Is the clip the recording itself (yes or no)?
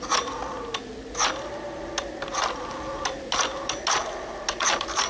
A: yes